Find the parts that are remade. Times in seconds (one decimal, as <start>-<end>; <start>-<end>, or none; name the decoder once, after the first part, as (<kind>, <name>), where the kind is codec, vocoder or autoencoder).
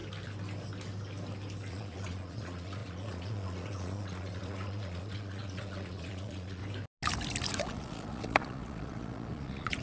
1.7-6.6 (vocoder, Vocos); 7.6-9.8